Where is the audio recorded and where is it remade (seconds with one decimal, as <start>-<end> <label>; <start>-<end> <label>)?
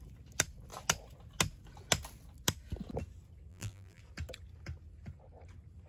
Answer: 0.0-3.5 recorded; 3.5-4.0 remade; 4.0-5.9 recorded